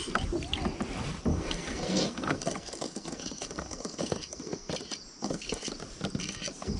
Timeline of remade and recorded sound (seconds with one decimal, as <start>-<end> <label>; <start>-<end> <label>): 0.0-1.3 recorded; 1.3-4.7 remade; 4.7-5.2 recorded; 5.2-5.7 remade; 5.7-6.2 recorded; 6.2-6.8 remade

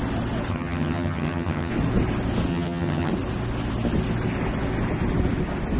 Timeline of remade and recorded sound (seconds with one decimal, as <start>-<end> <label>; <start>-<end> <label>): 0.0-0.5 recorded; 0.5-1.7 remade; 1.7-2.5 recorded; 2.5-3.1 remade; 3.1-5.8 recorded

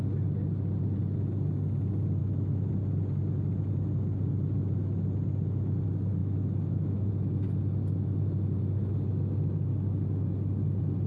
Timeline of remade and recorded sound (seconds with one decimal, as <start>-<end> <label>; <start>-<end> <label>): 0.0-2.2 recorded; 2.2-2.7 remade; 2.7-6.2 recorded; 6.2-7.1 remade; 7.1-11.1 recorded

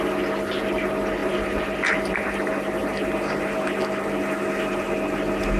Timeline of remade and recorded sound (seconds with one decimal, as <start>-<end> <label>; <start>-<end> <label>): 0.0-1.2 recorded; 1.2-2.3 remade; 2.3-2.8 recorded; 2.8-3.5 remade; 3.5-5.6 recorded

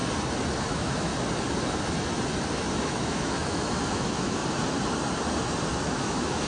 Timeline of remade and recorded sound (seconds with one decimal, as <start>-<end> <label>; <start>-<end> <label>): 0.0-0.7 recorded; 0.7-1.1 remade; 1.1-2.8 recorded; 2.8-4.4 remade; 4.4-5.8 recorded; 5.8-6.5 remade

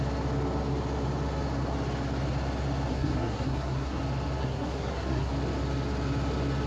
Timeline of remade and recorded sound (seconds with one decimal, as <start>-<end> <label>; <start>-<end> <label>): 0.0-2.9 recorded; 2.9-4.0 remade; 4.0-4.4 recorded; 4.4-5.3 remade; 5.3-6.7 recorded

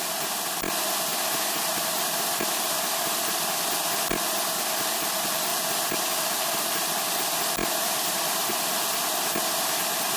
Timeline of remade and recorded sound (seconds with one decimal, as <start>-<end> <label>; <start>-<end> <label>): 0.0-10.2 remade

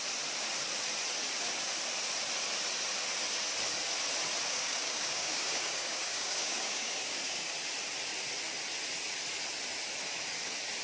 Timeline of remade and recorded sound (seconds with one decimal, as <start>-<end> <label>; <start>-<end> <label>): 0.0-4.5 recorded; 4.5-7.5 remade; 7.5-10.8 recorded